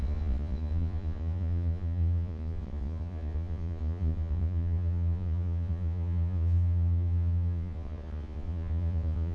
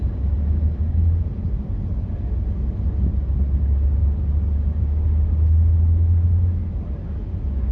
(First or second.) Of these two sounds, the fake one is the first